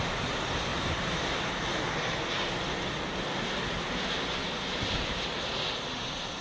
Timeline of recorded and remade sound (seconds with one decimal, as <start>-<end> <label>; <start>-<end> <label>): 0.0-0.7 recorded; 0.7-2.2 remade; 2.2-4.4 recorded; 4.4-5.3 remade; 5.3-6.4 recorded

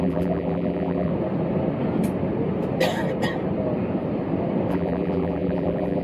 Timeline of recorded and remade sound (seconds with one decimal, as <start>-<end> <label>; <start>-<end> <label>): 0.0-1.1 remade; 1.1-4.7 recorded; 4.7-6.0 remade